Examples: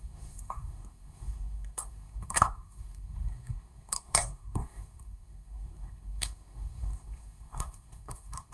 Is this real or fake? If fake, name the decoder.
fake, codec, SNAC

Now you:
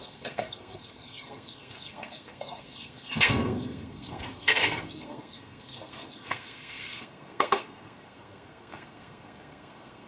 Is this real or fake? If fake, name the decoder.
fake, codec, SNAC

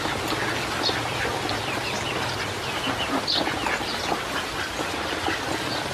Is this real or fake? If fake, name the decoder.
real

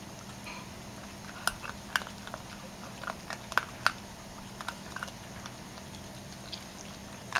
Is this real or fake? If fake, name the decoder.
real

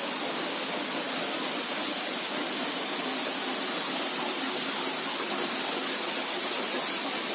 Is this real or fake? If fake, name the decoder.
real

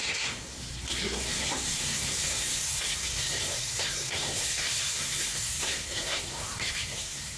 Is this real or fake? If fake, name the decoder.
fake, codec, SNAC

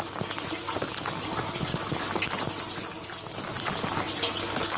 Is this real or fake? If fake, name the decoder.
real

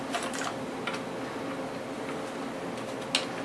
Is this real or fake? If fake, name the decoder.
real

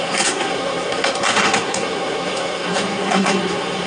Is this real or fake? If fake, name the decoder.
fake, codec, SNAC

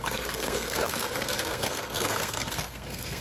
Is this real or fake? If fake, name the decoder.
fake, codec, SNAC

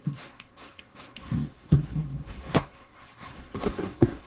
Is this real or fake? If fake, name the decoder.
fake, codec, SNAC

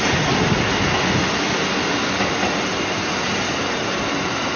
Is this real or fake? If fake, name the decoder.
real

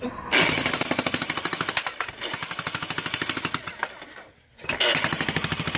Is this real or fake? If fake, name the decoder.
real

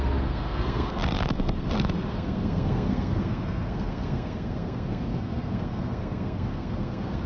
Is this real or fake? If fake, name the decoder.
fake, codec, SNAC